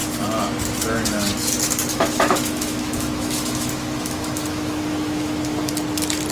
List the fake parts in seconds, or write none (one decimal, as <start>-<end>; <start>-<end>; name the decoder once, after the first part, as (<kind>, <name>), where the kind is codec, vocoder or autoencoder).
1.9-5.7 (autoencoder, DAC-VAE)